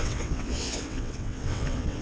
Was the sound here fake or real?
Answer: fake